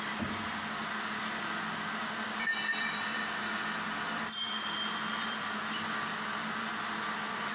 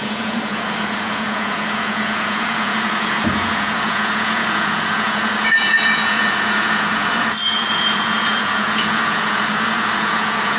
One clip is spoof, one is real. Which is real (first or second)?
first